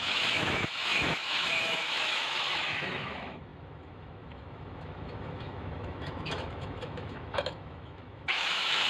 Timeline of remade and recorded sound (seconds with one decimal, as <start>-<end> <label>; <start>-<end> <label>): 0.0-8.9 remade